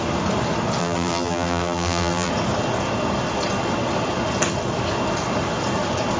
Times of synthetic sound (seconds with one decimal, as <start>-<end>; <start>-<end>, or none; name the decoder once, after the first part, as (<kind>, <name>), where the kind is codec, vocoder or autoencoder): 0.8-2.3 (vocoder, BigVGAN v2)